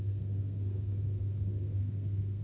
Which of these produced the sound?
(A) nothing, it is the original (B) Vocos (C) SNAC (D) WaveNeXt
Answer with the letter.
C